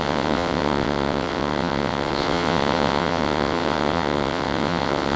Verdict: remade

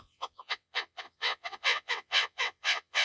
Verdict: remade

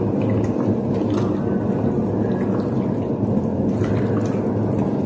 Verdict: recorded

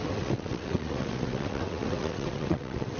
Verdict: remade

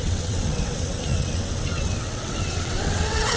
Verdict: remade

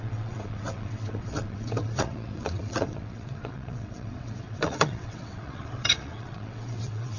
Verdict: remade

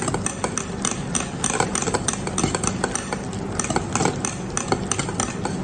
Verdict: recorded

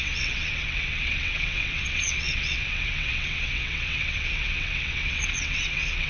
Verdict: remade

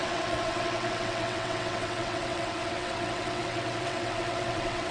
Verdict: remade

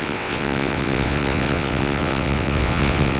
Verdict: remade